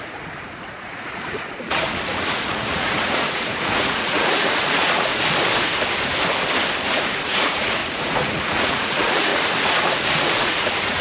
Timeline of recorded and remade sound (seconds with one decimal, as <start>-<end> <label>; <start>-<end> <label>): 0.0-5.1 remade; 5.1-6.9 recorded; 6.9-11.0 remade